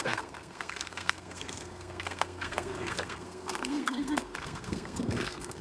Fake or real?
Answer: fake